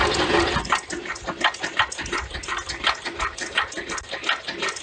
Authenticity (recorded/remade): recorded